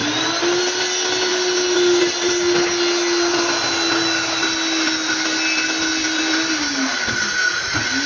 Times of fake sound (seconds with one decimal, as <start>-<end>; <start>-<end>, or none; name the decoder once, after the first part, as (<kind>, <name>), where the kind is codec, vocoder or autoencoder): none